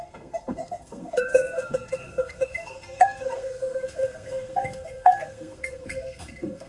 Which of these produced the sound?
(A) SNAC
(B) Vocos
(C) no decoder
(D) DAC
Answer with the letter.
A